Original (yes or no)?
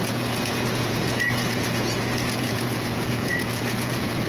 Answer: no